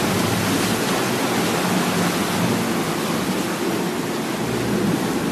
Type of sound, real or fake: real